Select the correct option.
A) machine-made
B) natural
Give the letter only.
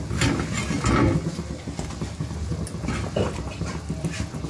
B